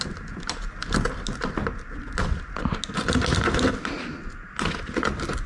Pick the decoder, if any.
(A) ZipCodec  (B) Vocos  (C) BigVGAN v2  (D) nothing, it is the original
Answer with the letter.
D